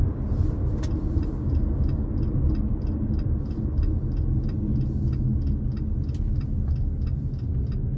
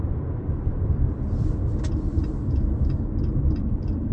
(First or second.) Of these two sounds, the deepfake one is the second